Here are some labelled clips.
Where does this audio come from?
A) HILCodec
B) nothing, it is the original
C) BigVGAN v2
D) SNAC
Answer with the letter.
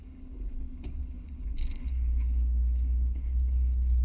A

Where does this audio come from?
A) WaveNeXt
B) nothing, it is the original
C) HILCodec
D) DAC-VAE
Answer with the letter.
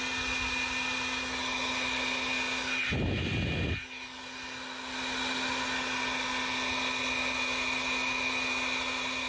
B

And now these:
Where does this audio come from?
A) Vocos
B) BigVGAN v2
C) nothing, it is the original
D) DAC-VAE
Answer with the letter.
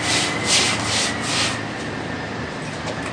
C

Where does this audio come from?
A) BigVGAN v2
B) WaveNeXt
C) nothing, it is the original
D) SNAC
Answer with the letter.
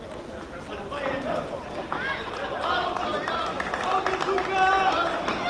C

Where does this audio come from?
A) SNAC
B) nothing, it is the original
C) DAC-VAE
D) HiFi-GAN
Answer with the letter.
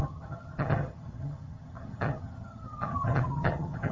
D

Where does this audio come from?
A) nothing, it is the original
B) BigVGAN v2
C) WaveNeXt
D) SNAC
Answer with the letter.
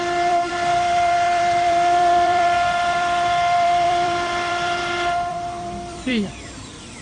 B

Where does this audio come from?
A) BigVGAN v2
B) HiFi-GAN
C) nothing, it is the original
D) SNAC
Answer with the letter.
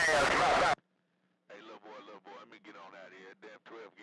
A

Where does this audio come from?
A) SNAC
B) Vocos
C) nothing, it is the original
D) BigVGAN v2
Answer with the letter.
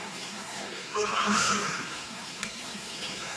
A